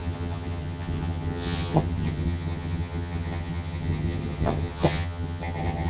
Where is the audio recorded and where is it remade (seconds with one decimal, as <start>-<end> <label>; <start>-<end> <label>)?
0.0-5.9 remade